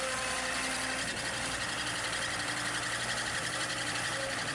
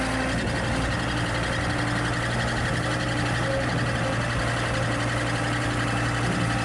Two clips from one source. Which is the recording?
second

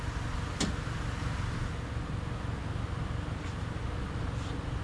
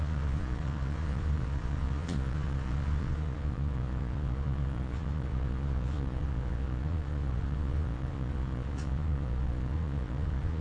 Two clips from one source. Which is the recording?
first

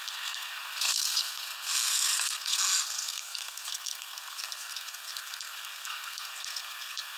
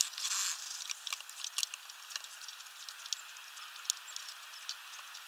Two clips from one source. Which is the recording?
second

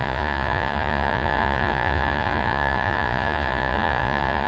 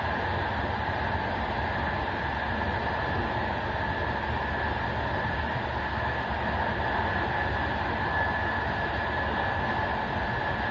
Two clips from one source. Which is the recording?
second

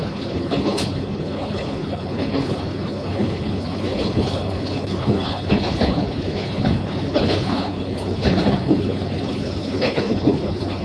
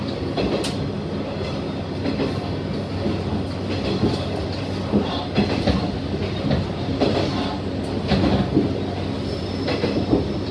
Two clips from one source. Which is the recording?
second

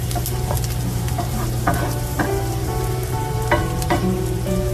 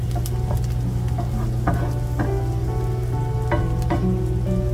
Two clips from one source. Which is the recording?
second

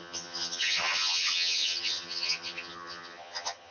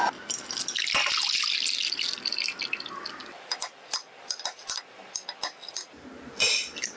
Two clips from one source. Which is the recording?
second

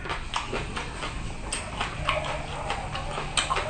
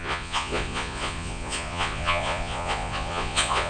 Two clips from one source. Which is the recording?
first